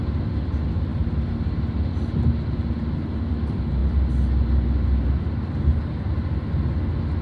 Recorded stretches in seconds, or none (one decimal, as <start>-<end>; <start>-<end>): 0.0-7.2